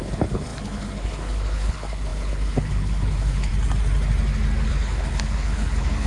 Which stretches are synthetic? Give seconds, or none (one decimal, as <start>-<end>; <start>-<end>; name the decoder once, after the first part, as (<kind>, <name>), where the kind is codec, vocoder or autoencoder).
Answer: 0.0-3.5 (codec, HILCodec); 4.7-6.1